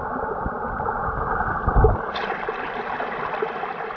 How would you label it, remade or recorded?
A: recorded